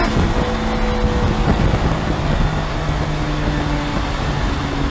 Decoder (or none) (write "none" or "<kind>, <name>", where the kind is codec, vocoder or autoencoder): none